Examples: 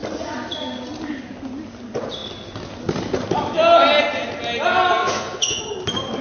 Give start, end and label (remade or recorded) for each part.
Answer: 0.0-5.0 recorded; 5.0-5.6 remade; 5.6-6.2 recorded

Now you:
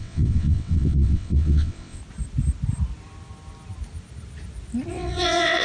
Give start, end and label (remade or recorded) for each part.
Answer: 0.0-2.0 remade; 2.0-4.9 recorded; 4.9-5.6 remade

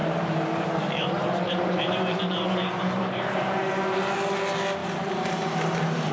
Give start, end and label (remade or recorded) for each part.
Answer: 0.0-3.7 remade; 3.7-4.8 recorded; 4.8-6.1 remade

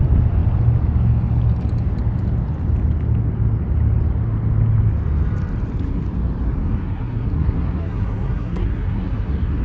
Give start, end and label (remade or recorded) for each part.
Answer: 0.0-6.6 recorded; 6.6-9.6 remade

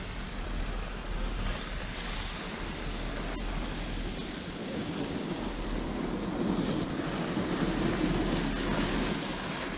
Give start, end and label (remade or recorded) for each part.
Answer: 0.0-4.6 recorded; 4.6-5.1 remade; 5.1-9.8 recorded

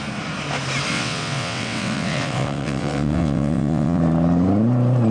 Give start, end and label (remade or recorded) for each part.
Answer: 0.0-0.9 recorded; 0.9-4.0 remade; 4.0-5.1 recorded

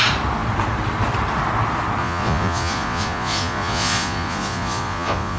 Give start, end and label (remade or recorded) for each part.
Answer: 0.0-2.0 recorded; 2.0-5.4 remade